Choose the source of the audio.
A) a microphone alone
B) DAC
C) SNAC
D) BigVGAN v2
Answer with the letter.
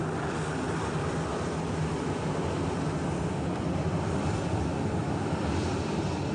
D